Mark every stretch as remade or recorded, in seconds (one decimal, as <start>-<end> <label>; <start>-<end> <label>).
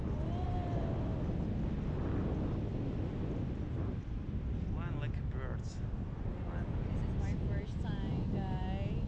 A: 0.0-9.1 recorded